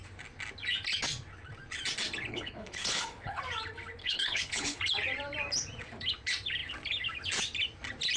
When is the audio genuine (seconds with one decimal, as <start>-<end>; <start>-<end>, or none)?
0.0-2.3; 3.4-4.0; 4.8-8.2